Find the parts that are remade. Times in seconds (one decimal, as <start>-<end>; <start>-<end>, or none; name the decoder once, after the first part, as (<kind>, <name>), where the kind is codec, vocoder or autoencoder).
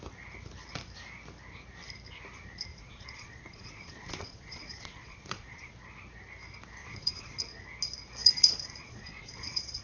2.7-5.7 (vocoder, Vocos); 6.8-7.4; 8.2-9.8